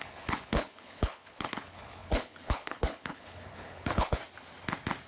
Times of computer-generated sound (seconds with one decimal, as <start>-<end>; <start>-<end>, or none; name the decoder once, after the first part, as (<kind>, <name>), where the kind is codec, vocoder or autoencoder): 0.0-4.2 (codec, HILCodec)